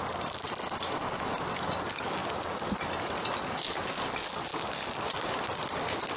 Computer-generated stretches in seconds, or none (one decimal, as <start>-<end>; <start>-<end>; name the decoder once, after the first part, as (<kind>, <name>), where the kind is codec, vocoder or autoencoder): none